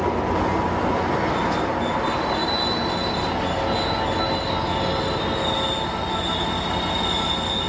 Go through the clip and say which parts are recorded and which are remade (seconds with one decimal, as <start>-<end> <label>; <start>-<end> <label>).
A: 0.0-7.7 recorded